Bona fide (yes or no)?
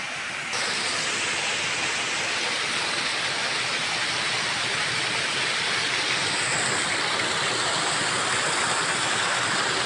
yes